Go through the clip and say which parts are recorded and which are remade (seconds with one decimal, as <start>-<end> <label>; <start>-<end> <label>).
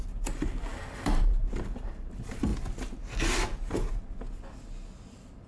0.0-2.5 remade; 2.5-5.1 recorded; 5.1-5.5 remade